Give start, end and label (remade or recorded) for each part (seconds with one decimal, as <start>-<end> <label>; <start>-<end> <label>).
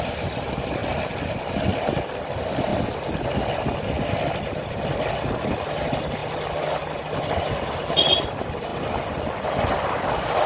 0.0-10.5 recorded